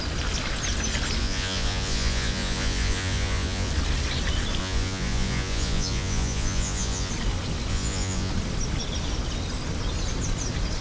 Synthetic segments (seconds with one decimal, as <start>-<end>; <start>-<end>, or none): 1.2-3.7; 4.6-7.1; 7.7-8.3

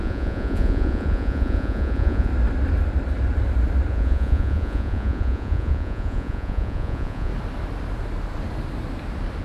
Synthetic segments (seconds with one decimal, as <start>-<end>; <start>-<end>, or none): 0.0-2.3; 3.9-7.3

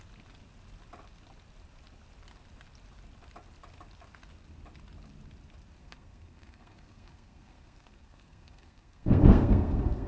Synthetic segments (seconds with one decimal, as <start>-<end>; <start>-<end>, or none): 5.8-10.1

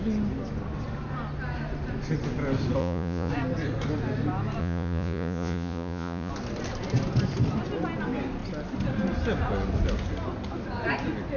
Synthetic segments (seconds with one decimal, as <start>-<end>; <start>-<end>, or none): 2.8-3.3; 4.6-6.3

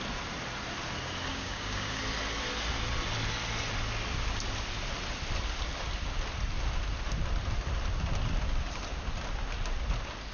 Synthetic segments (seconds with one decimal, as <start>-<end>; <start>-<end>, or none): 1.3-2.0

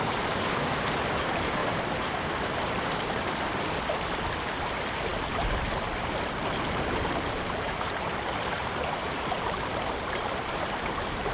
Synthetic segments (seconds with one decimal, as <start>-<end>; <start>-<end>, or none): 1.6-3.3; 6.4-10.5

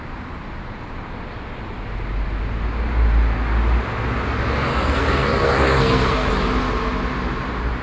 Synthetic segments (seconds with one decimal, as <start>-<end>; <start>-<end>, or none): 4.7-6.3